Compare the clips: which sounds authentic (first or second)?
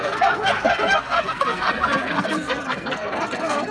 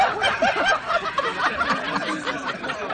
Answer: second